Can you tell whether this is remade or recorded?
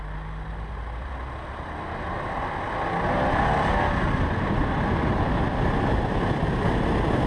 recorded